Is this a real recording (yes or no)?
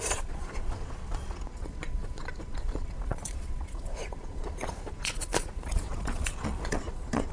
no